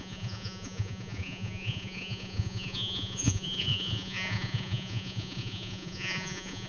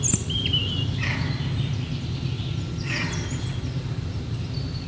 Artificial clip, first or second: first